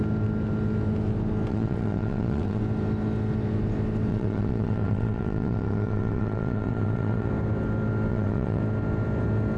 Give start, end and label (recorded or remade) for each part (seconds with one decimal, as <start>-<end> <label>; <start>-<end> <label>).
0.0-1.5 recorded; 1.5-2.6 remade; 2.6-4.1 recorded; 4.1-7.3 remade; 7.3-8.1 recorded; 8.1-8.6 remade; 8.6-9.6 recorded